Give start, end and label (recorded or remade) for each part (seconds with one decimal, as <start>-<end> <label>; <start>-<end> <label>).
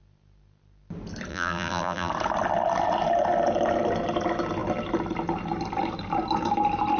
0.0-1.3 recorded; 1.3-2.1 remade; 2.1-7.0 recorded